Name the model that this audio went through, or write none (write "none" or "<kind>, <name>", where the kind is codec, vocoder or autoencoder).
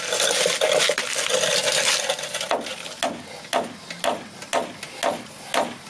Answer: none